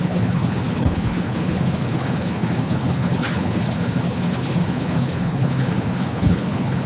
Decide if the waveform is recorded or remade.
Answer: remade